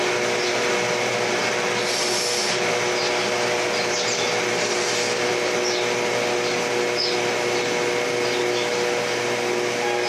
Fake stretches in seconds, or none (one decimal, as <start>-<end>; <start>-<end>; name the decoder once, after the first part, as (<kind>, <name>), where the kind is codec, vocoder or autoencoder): none